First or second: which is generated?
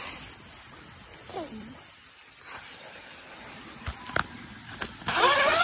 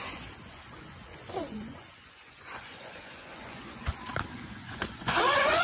second